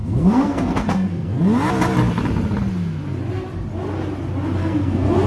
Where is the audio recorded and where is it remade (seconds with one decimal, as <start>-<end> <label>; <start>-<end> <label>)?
0.0-1.4 remade; 1.4-4.6 recorded; 4.6-5.3 remade